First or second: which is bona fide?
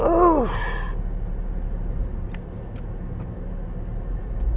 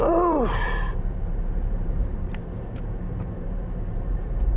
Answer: first